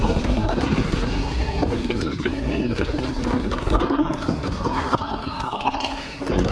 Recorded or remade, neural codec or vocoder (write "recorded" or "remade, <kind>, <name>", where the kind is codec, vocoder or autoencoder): remade, codec, SNAC